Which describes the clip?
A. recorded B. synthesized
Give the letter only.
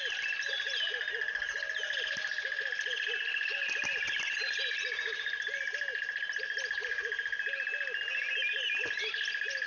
A